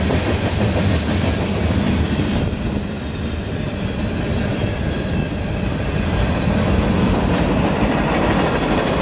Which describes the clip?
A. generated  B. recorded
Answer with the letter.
B